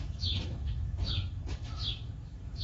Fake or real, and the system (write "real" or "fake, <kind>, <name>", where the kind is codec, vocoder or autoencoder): fake, autoencoder, DAC-VAE